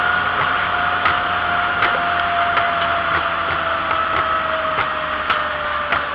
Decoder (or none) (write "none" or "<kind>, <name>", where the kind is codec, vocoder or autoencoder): none